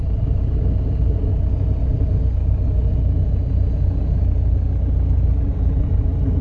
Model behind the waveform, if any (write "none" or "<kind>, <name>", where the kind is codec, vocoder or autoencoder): none